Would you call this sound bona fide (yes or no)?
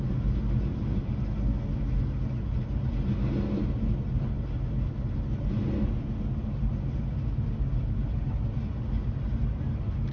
yes